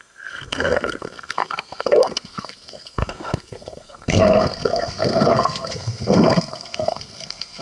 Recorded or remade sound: remade